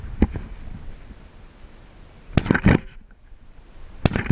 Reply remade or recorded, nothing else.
recorded